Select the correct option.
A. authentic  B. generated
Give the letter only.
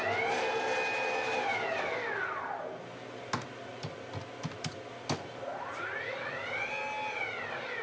A